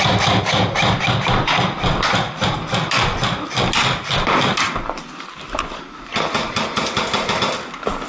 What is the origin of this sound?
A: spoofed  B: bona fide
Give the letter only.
B